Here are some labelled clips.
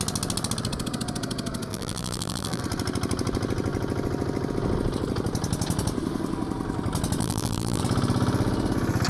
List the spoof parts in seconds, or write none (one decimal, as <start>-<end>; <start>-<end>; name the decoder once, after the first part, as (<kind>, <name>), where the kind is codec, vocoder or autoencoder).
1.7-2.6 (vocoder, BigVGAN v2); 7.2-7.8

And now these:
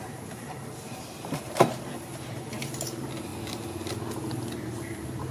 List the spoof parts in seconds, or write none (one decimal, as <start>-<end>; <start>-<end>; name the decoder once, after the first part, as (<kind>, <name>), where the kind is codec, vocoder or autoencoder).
0.0-3.3 (vocoder, BigVGAN v2); 4.8-5.3

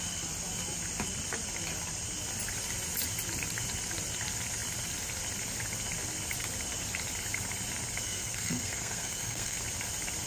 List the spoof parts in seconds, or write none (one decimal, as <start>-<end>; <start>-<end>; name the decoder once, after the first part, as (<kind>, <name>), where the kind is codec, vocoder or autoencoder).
8.0-9.6 (codec, SNAC)